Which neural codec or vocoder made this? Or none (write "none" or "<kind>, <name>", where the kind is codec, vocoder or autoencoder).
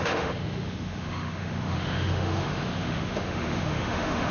autoencoder, DAC-VAE